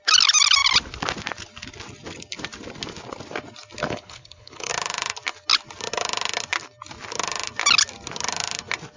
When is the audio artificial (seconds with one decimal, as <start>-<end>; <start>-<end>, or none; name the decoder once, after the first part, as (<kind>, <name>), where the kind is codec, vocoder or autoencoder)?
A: 3.8-4.7 (codec, HILCodec)